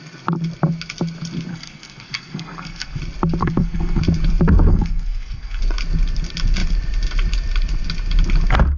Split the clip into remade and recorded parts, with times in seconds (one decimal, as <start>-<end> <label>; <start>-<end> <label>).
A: 0.0-1.5 recorded; 1.5-3.0 remade; 3.0-3.4 recorded; 3.4-4.0 remade; 4.0-4.7 recorded; 4.7-5.6 remade; 5.6-8.8 recorded